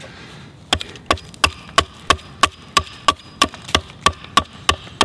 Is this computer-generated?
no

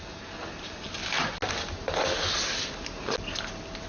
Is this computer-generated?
no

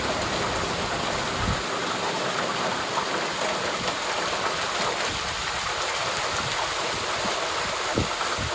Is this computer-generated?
no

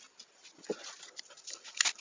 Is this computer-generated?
no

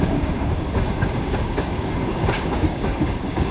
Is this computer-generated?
yes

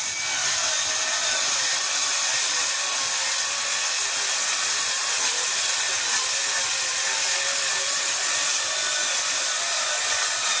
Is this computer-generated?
no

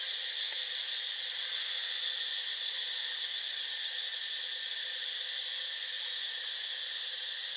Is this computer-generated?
no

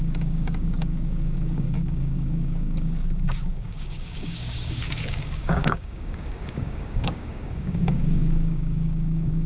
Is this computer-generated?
yes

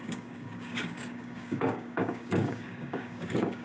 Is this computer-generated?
yes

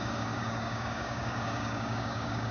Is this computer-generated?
yes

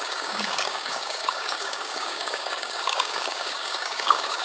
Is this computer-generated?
yes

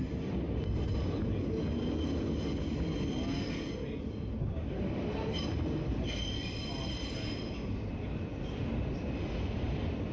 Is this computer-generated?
no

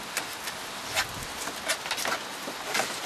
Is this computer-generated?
no